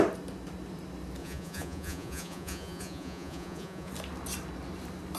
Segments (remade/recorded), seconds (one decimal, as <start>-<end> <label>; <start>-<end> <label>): 0.0-1.2 recorded; 1.2-3.9 remade; 3.9-5.2 recorded